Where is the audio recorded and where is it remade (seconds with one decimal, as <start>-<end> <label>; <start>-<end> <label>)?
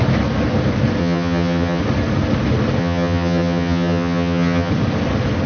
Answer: 0.0-1.0 recorded; 1.0-1.8 remade; 1.8-2.8 recorded; 2.8-4.7 remade; 4.7-5.5 recorded